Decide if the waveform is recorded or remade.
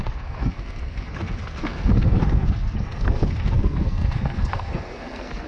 remade